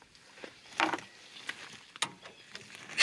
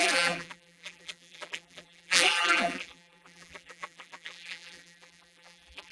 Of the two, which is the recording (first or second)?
first